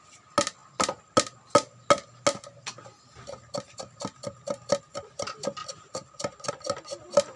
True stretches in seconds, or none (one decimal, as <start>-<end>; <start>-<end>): 0.0-7.4